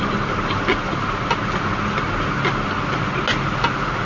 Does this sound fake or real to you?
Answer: real